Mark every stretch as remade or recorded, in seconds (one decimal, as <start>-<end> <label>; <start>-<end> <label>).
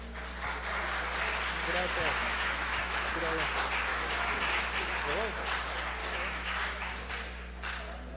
0.0-2.2 recorded; 2.2-3.1 remade; 3.1-3.9 recorded; 3.9-4.4 remade; 4.4-6.0 recorded; 6.0-7.1 remade; 7.1-8.2 recorded